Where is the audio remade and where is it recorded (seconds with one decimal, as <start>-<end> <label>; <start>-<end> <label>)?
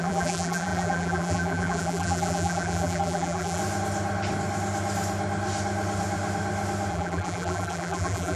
0.0-3.6 remade; 3.6-6.9 recorded; 6.9-8.4 remade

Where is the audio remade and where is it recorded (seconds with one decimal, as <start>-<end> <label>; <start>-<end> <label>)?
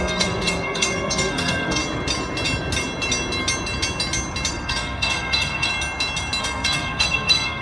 0.0-1.8 remade; 1.8-4.5 recorded; 4.5-5.7 remade; 5.7-6.4 recorded; 6.4-7.6 remade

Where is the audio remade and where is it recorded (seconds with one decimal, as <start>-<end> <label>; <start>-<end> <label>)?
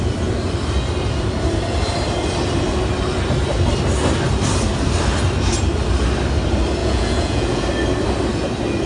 0.0-6.8 recorded; 6.8-7.6 remade; 7.6-8.9 recorded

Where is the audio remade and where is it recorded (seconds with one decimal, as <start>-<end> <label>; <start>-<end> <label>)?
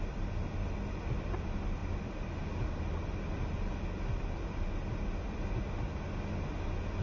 0.0-7.0 recorded